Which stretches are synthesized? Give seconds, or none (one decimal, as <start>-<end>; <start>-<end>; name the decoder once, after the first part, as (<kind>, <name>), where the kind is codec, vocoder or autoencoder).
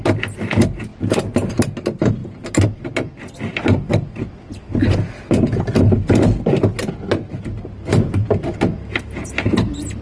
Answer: none